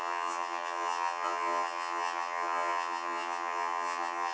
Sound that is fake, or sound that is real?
fake